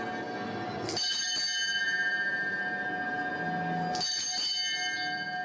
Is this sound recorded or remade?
recorded